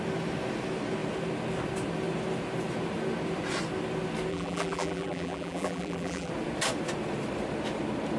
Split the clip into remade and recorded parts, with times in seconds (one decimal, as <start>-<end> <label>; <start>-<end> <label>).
0.0-4.3 recorded; 4.3-6.3 remade; 6.3-8.2 recorded